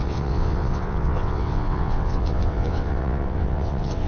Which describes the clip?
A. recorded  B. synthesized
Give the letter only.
B